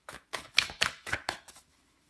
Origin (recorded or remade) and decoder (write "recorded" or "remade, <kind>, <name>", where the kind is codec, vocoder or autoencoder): remade, autoencoder, DAC-VAE